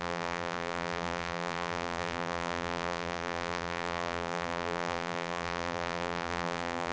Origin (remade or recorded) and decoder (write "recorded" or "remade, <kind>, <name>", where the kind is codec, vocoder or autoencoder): remade, vocoder, BigVGAN v2